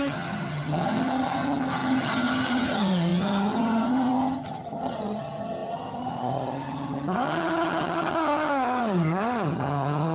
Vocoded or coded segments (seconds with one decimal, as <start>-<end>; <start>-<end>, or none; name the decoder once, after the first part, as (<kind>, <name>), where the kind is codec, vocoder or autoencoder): 0.0-10.1 (vocoder, HiFi-GAN)